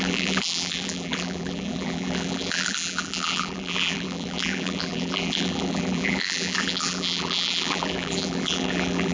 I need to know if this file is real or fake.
fake